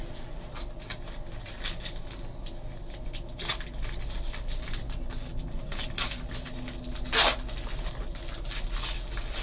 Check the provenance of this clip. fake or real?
real